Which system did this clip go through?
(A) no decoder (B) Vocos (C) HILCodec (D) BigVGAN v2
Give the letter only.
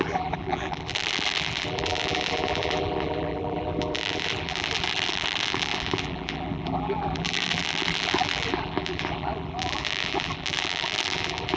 D